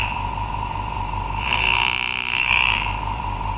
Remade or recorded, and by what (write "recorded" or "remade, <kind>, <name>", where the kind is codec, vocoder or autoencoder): remade, vocoder, BigVGAN v2